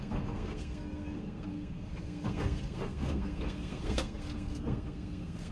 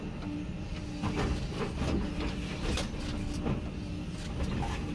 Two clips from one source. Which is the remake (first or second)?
first